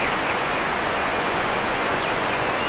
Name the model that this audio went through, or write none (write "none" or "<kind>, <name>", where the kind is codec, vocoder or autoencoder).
vocoder, Vocos